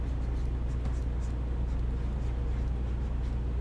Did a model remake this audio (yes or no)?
no